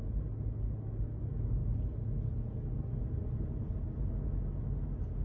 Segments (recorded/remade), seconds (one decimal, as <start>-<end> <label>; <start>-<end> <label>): 0.0-5.2 recorded